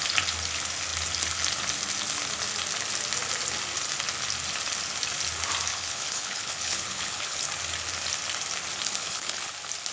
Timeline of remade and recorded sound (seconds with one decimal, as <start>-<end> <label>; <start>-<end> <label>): 0.0-5.7 recorded; 5.7-7.4 remade; 7.4-9.0 recorded; 9.0-9.5 remade; 9.5-9.9 recorded